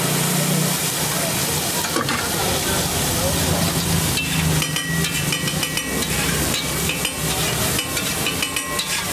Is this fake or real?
real